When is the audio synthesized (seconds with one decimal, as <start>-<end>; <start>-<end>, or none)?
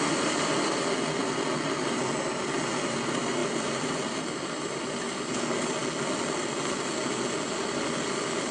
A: 3.4-5.3